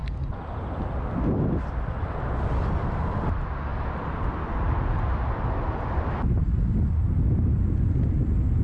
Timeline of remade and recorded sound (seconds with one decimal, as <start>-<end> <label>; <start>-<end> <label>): 0.0-8.6 recorded